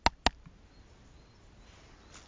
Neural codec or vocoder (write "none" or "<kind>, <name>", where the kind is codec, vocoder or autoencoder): none